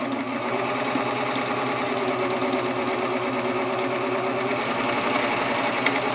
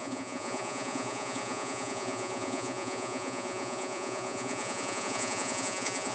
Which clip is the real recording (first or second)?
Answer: first